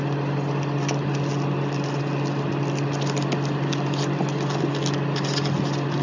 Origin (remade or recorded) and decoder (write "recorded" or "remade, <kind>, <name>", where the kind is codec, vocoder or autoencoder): recorded